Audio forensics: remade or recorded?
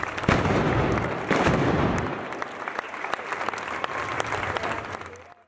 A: remade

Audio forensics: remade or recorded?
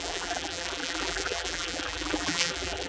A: remade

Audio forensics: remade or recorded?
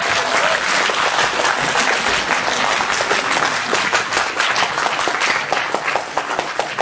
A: recorded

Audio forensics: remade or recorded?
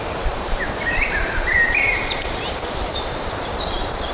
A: remade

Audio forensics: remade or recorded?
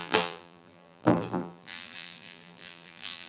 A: remade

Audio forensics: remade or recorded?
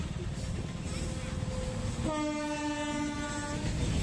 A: recorded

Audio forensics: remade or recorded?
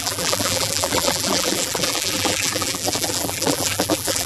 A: remade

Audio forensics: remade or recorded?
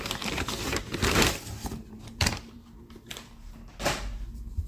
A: remade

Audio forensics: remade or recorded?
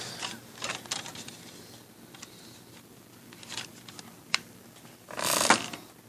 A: remade